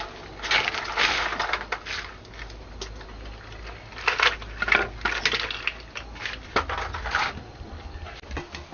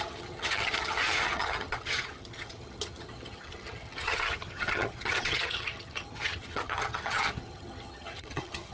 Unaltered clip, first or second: first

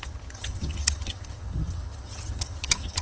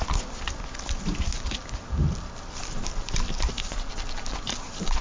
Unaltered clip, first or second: second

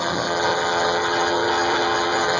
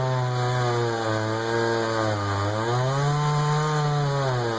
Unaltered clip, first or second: second